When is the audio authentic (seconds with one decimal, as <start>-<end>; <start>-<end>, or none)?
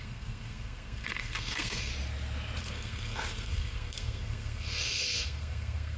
1.9-2.6